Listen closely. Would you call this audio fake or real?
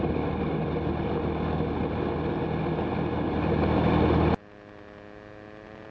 real